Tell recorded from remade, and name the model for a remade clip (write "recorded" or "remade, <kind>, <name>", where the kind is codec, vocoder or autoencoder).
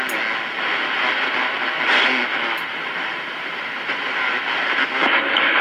recorded